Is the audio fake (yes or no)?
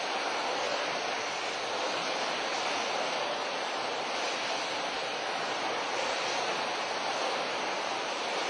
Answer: no